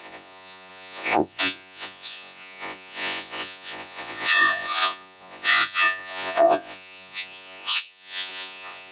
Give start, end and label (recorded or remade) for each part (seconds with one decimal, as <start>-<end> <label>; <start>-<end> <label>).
0.0-8.9 remade